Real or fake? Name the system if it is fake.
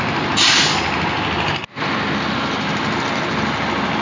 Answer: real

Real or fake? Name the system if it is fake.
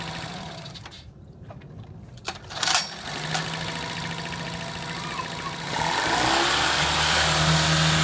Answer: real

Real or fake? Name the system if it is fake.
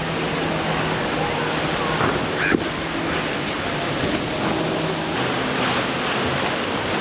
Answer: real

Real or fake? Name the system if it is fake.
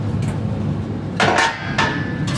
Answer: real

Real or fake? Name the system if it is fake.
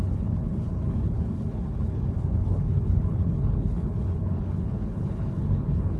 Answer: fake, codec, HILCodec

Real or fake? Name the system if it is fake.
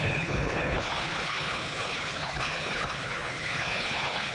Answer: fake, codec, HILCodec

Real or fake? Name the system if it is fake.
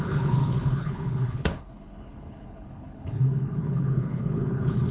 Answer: fake, codec, HILCodec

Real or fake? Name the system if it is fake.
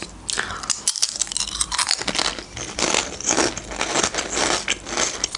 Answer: real